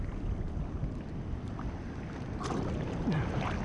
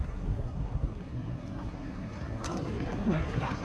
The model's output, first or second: second